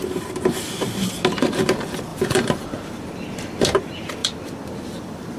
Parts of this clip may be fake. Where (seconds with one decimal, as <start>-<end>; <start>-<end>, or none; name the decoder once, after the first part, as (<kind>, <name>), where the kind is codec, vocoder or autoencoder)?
2.1-3.8 (vocoder, BigVGAN v2); 4.2-5.4